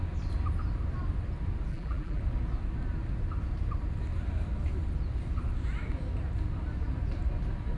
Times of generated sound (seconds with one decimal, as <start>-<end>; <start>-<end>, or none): 1.7-2.2